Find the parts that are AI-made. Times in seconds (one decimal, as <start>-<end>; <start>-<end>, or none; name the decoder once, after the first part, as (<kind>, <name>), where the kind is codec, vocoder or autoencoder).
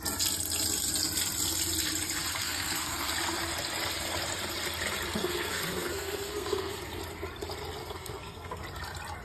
2.4-3.1 (codec, SNAC); 5.2-7.0; 7.8-8.6